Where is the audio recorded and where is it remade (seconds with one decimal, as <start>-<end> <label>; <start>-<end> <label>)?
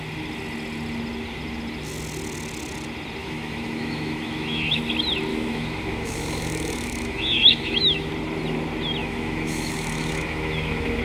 0.0-3.2 recorded; 3.2-4.8 remade; 4.8-5.3 recorded; 5.3-8.1 remade; 8.1-9.0 recorded; 9.0-11.0 remade